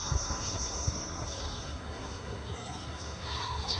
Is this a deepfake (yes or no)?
yes